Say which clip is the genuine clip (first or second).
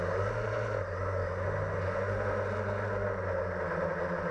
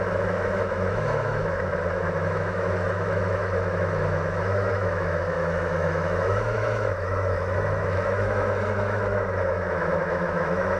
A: first